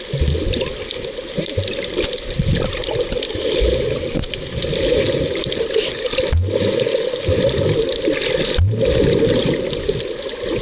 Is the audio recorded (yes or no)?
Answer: yes